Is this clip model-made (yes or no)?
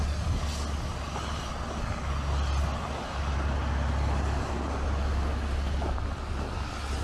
no